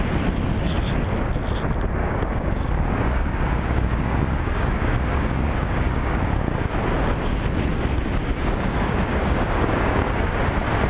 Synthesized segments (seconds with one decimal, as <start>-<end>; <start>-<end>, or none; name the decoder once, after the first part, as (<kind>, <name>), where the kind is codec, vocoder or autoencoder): 2.0-6.7 (codec, DAC); 8.2-10.1